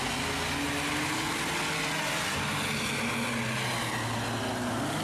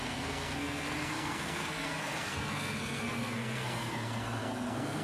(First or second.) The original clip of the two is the first